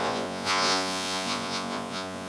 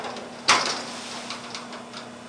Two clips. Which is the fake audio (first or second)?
first